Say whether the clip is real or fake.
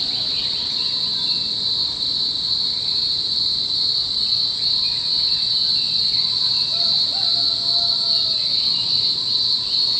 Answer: real